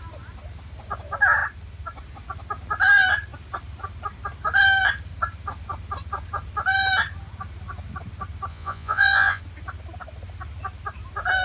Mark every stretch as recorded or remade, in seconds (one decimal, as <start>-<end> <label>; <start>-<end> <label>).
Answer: 0.0-8.5 recorded; 8.5-9.4 remade; 9.4-11.4 recorded